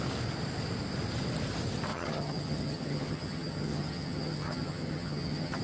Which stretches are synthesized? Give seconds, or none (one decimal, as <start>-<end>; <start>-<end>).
1.9-5.6